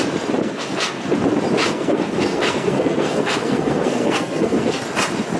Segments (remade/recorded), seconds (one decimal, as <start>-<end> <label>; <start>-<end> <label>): 0.0-0.4 recorded; 0.4-1.1 remade; 1.1-1.6 recorded; 1.6-4.8 remade; 4.8-5.4 recorded